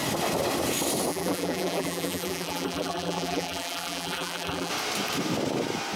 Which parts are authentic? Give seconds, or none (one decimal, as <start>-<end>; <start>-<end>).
0.0-1.1; 4.7-6.0